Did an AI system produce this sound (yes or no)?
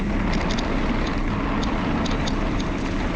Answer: no